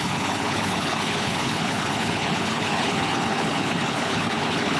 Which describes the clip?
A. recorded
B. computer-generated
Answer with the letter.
B